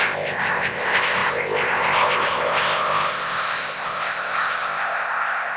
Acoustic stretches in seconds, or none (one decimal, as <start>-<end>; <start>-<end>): none